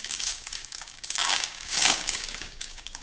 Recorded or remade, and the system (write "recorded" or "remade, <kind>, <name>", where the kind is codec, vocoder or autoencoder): remade, codec, DAC